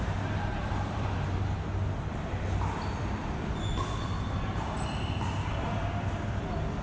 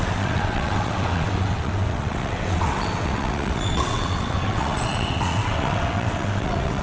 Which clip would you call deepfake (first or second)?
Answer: second